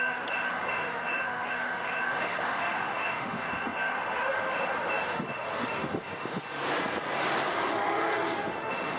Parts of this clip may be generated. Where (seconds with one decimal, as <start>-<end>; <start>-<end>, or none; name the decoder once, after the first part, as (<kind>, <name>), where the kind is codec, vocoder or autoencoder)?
0.0-6.4 (autoencoder, DAC-VAE); 7.5-9.0